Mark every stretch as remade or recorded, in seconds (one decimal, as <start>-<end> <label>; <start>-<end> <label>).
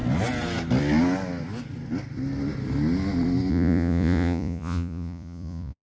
0.0-3.5 recorded; 3.5-5.9 remade